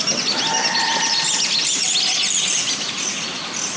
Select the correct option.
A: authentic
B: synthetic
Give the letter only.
A